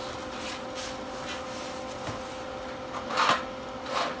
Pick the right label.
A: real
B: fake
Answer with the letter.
A